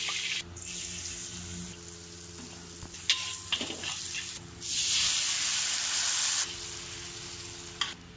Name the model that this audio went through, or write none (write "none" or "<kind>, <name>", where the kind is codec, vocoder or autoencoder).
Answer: none